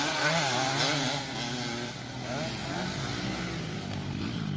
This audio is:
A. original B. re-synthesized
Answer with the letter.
A